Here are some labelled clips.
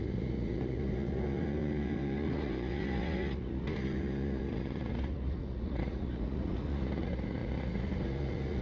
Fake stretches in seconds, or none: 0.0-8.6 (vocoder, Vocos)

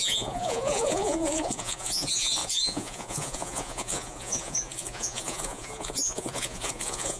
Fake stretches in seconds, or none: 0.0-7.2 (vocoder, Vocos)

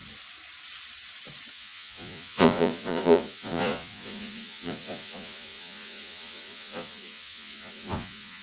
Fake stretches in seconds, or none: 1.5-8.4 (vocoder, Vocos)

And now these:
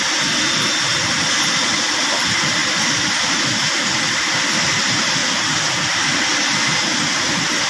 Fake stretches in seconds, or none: none

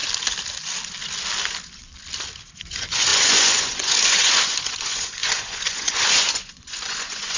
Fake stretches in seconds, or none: 2.5-7.4 (vocoder, Vocos)

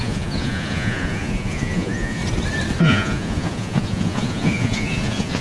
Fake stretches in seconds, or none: 0.0-2.2 (vocoder, Vocos); 2.8-5.4

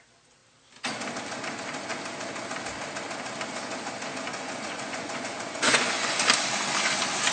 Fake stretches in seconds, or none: 4.3-6.2 (vocoder, Vocos)

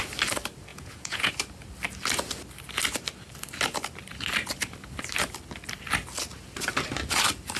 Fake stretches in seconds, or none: 0.7-1.3 (vocoder, Vocos)